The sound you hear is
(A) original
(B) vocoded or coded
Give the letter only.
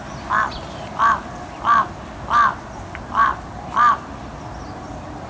A